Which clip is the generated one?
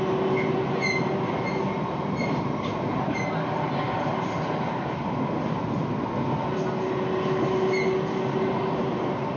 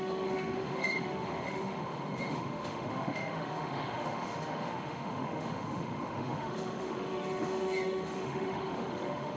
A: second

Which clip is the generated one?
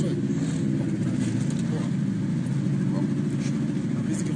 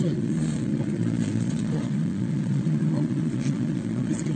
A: second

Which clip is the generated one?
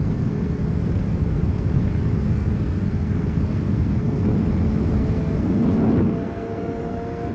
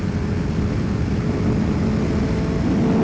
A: first